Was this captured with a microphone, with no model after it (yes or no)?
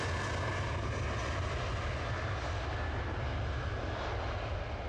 yes